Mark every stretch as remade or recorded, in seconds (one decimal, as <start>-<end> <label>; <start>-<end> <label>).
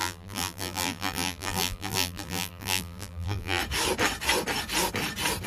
0.0-3.6 remade; 3.6-5.5 recorded